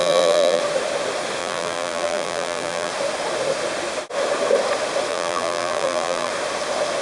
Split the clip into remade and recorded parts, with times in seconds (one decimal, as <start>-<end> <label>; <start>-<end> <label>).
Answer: 0.0-0.6 remade; 0.6-1.4 recorded; 1.4-2.9 remade; 2.9-5.1 recorded; 5.1-6.3 remade; 6.3-7.0 recorded